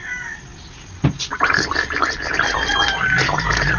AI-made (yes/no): no